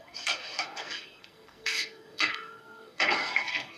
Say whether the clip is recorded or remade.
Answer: remade